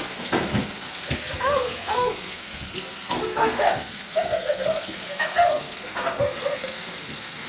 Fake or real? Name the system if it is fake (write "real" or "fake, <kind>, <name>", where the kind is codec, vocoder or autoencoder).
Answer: fake, codec, SNAC